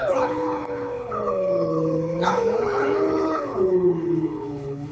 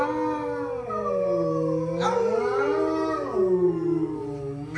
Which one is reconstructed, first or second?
first